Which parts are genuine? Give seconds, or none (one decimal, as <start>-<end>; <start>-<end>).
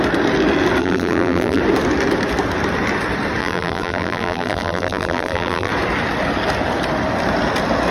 0.0-0.8; 1.6-3.4; 5.7-7.9